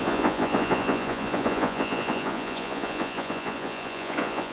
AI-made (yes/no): yes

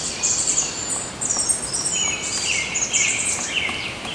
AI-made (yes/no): no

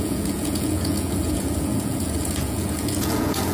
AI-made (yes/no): yes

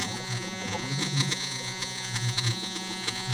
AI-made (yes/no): yes